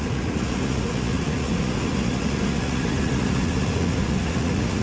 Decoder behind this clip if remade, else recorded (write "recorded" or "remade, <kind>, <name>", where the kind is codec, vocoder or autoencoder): remade, vocoder, Vocos